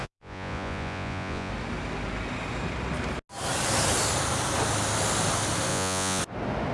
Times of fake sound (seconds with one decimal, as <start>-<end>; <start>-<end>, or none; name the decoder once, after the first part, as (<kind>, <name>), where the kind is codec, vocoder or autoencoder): 0.0-1.5 (vocoder, Vocos); 5.7-6.2